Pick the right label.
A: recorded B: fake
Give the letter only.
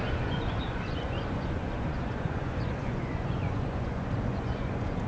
B